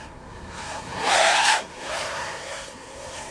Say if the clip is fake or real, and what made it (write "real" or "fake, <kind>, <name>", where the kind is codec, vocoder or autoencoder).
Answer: fake, codec, SNAC